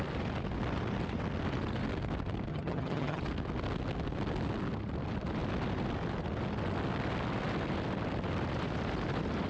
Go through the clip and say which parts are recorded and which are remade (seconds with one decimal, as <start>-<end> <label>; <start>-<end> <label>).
0.0-2.5 recorded; 2.5-3.2 remade; 3.2-9.5 recorded